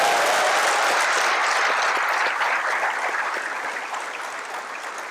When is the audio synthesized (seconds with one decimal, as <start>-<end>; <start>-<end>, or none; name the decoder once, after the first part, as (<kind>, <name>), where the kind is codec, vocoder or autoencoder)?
none